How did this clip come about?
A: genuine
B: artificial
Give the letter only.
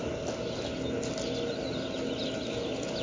A